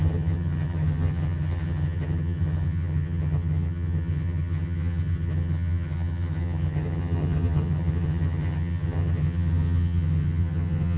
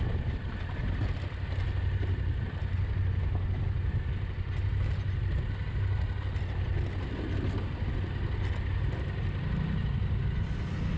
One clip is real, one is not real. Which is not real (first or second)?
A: first